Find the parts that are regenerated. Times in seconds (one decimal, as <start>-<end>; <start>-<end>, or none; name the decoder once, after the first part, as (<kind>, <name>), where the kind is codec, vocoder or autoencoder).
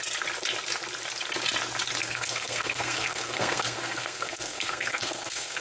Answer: 2.0-5.6 (codec, SNAC)